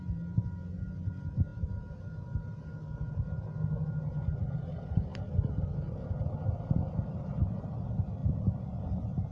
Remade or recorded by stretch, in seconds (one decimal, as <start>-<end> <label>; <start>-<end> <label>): 0.0-9.3 recorded